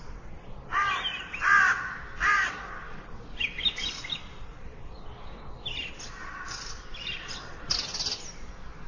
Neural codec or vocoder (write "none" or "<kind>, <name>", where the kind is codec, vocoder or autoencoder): none